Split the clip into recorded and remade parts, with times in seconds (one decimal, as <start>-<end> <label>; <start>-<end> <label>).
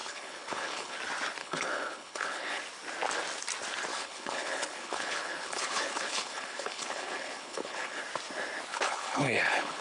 0.0-1.0 remade; 1.0-1.4 recorded; 1.4-2.6 remade; 2.6-3.9 recorded; 3.9-8.0 remade; 8.0-8.7 recorded; 8.7-9.8 remade